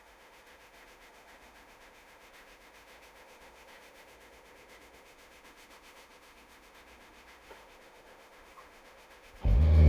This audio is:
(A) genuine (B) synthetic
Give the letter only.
B